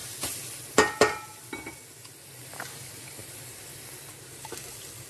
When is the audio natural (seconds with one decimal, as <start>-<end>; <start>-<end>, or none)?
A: 0.0-3.2; 4.5-5.1